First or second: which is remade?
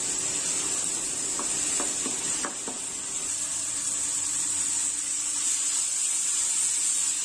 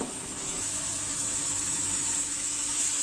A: second